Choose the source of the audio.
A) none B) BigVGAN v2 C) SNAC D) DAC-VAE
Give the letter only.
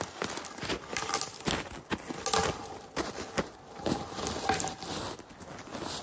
A